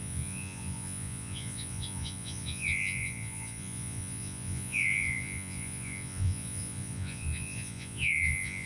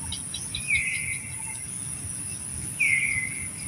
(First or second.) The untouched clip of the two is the second